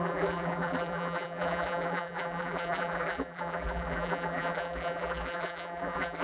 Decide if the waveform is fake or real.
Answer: fake